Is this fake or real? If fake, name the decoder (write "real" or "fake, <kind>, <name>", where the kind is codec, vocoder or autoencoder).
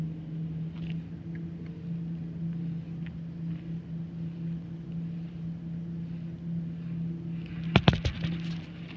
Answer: real